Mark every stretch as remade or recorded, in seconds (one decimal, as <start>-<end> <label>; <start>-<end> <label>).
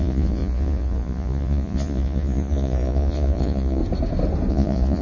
0.0-3.8 remade; 3.8-4.5 recorded; 4.5-5.0 remade